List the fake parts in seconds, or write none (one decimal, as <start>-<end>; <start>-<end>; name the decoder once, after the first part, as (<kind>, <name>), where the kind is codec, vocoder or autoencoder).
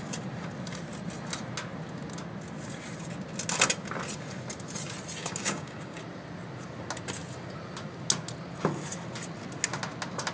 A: 5.2-6.0 (codec, DAC)